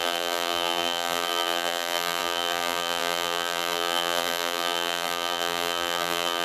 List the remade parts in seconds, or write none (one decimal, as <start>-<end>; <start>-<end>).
0.0-6.4